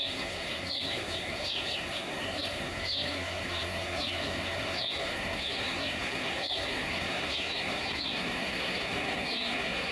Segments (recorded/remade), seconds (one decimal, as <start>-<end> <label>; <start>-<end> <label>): 0.0-9.9 remade